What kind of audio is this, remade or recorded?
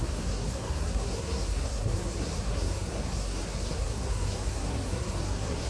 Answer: remade